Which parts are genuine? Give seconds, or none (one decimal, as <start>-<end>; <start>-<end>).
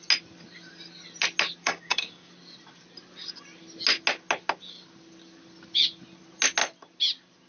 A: 0.0-1.6; 2.3-7.5